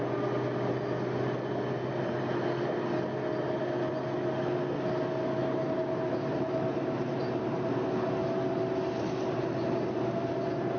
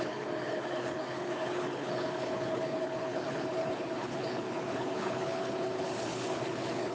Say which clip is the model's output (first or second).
second